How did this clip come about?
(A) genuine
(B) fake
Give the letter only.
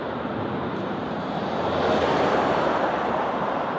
B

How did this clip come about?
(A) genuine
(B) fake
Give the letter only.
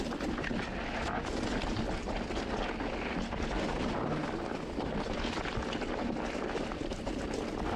A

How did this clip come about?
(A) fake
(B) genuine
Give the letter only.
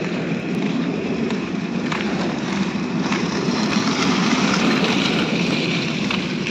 A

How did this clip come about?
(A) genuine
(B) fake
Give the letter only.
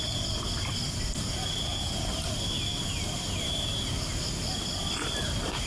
A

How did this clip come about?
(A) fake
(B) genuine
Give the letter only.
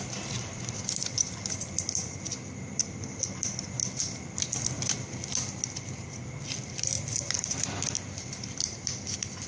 A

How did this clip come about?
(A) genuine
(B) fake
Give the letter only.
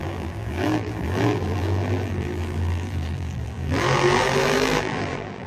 B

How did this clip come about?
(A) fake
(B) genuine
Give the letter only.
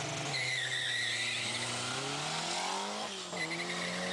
B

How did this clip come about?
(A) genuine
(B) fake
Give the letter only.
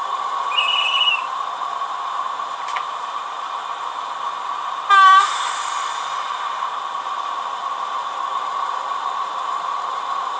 B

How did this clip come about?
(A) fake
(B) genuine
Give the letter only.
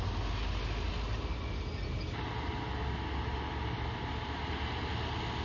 B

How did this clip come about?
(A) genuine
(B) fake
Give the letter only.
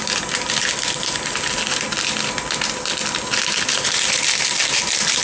A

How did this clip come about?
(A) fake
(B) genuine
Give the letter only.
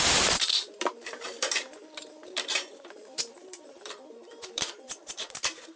A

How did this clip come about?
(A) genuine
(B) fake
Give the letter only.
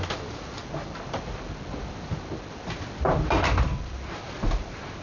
A